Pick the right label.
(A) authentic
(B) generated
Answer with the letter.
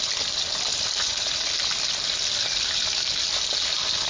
A